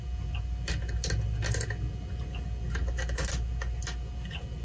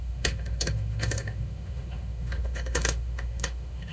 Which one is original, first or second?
first